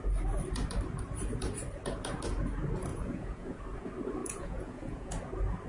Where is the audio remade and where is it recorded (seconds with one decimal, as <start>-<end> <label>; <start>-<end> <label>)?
0.0-2.9 recorded; 2.9-3.6 remade; 3.6-4.2 recorded; 4.2-5.1 remade; 5.1-5.7 recorded